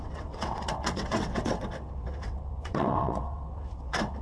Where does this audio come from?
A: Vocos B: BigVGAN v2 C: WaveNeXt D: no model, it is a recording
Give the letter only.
C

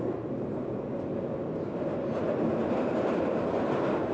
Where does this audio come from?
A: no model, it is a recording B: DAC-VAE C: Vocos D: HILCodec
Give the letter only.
A